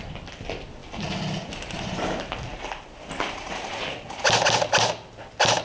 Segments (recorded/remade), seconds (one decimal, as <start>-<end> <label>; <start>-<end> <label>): 0.0-5.6 recorded